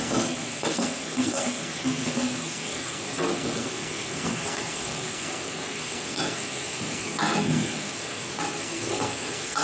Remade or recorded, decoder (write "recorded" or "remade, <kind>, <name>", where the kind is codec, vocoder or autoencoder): remade, codec, SNAC